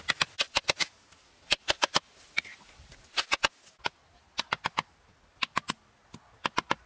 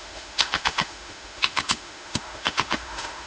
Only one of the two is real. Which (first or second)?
first